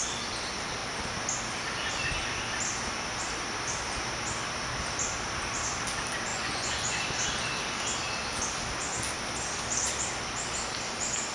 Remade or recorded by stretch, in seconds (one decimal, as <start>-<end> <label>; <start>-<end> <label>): 0.0-6.3 recorded; 6.3-7.0 remade; 7.0-11.3 recorded

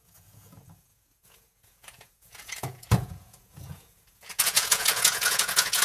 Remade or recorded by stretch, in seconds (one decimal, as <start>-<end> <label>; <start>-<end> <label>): 0.0-5.8 remade

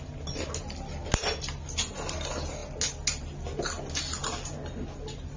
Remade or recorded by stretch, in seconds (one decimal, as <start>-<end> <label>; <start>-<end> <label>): 0.0-5.4 recorded

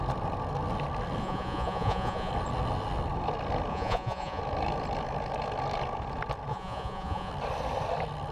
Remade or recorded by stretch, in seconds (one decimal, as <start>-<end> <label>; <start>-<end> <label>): 0.0-1.2 recorded; 1.2-2.3 remade; 2.3-3.7 recorded; 3.7-4.4 remade; 4.4-6.5 recorded; 6.5-7.3 remade; 7.3-8.3 recorded

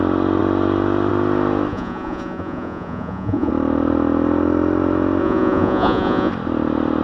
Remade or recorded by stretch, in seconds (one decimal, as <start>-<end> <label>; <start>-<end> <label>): 0.0-1.7 recorded; 1.7-3.5 remade; 3.5-5.2 recorded; 5.2-6.3 remade; 6.3-7.0 recorded

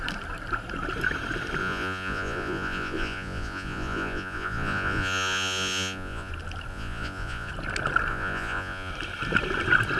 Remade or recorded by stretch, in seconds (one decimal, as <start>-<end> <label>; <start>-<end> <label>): 0.0-1.6 recorded; 1.6-6.3 remade; 6.3-6.7 recorded; 6.7-7.5 remade; 7.5-8.1 recorded; 8.1-8.9 remade; 8.9-10.0 recorded